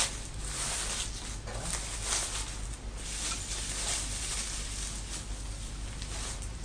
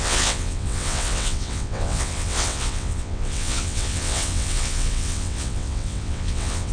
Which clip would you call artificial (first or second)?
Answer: second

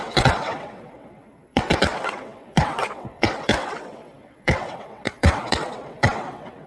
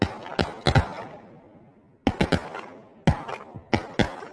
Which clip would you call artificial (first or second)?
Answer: first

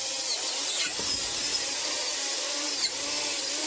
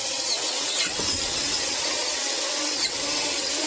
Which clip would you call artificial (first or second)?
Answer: second